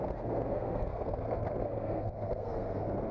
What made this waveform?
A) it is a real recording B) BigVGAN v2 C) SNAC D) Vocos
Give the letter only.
C